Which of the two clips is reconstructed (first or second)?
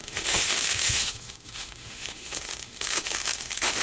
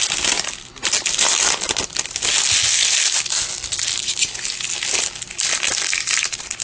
first